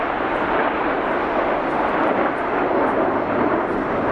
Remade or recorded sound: recorded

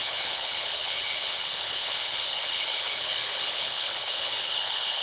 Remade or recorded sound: remade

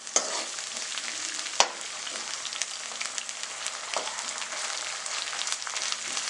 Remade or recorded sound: recorded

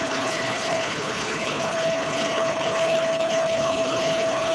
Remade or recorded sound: remade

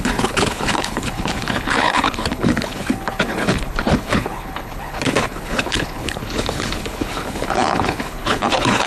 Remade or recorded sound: remade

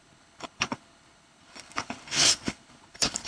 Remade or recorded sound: remade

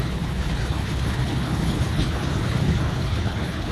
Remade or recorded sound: remade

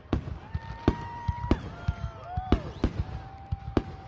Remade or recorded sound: recorded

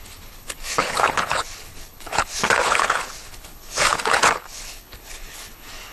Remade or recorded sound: remade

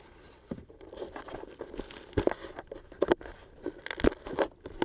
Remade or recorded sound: recorded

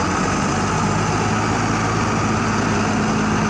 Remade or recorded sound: recorded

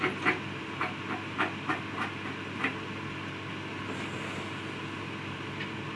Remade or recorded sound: recorded